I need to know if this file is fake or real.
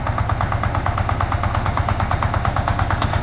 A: fake